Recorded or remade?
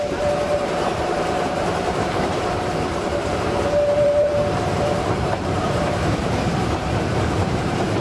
remade